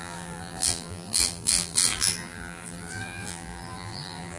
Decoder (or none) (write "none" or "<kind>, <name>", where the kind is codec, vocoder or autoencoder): vocoder, BigVGAN v2